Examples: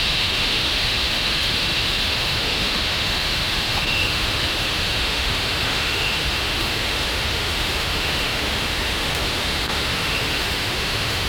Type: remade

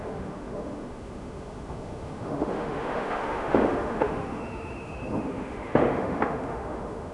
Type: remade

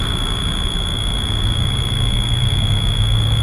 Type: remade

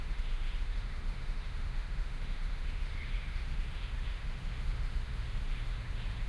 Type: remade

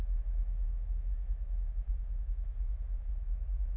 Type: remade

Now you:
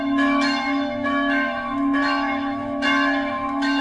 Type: remade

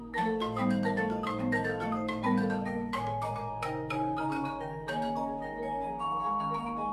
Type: remade